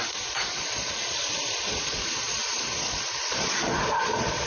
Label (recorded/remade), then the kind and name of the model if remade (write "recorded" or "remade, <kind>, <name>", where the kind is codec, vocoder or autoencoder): remade, vocoder, Vocos